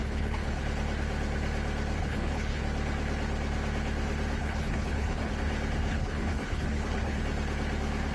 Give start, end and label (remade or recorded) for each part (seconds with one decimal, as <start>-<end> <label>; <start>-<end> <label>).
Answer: 0.0-0.6 remade; 0.6-2.0 recorded; 2.0-2.6 remade; 2.6-4.4 recorded; 4.4-5.3 remade; 5.3-5.9 recorded; 5.9-7.2 remade; 7.2-8.1 recorded